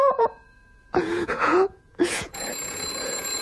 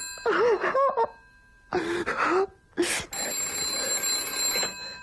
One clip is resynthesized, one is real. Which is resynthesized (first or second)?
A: first